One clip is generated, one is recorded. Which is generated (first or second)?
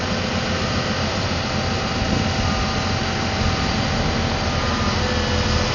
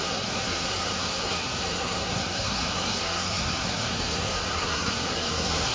second